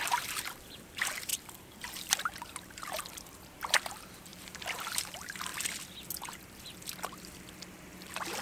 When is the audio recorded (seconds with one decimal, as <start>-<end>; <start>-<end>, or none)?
5.5-8.4